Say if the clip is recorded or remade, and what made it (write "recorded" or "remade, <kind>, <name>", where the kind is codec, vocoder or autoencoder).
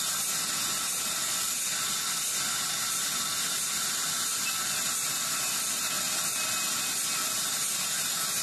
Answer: recorded